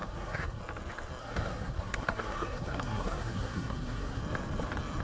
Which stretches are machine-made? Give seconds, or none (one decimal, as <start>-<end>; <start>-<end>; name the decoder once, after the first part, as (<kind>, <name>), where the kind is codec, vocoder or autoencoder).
0.0-0.6 (codec, SNAC); 1.2-4.2